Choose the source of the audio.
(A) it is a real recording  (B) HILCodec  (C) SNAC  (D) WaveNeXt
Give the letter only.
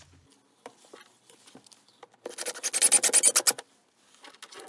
A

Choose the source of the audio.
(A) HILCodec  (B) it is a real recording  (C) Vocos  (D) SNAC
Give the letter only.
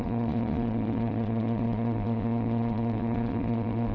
C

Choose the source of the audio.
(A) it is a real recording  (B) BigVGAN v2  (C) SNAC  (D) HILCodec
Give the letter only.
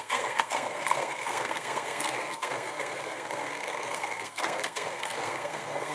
C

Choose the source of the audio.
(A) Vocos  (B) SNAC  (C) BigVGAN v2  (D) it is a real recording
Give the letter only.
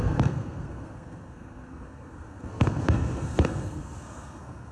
B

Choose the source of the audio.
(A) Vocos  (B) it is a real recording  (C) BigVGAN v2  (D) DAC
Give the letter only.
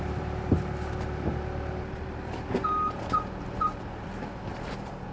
B